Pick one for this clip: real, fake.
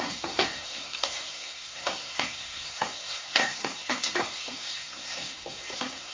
fake